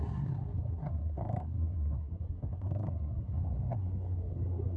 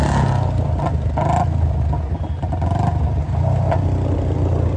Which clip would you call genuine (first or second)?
second